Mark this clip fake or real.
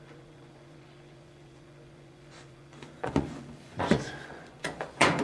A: fake